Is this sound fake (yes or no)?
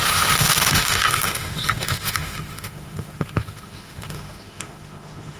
yes